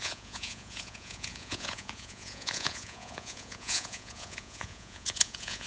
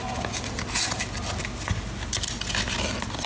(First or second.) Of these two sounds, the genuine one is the second